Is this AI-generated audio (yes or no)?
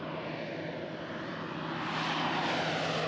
no